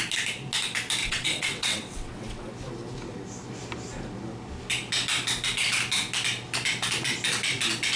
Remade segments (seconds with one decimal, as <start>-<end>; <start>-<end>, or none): 1.0-2.5

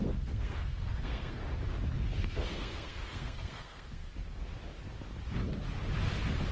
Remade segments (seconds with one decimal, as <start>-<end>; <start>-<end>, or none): 0.0-1.4; 2.2-4.0

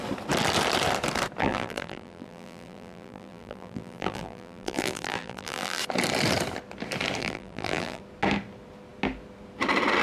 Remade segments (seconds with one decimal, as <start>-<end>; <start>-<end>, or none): 1.4-5.8; 7.2-8.0